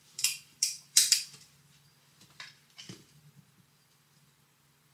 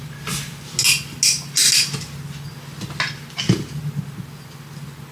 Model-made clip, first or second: first